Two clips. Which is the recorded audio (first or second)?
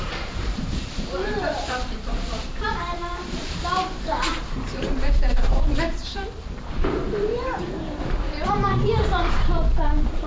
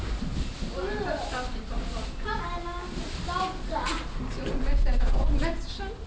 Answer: second